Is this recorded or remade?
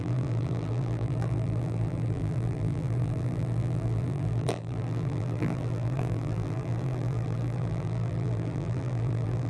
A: remade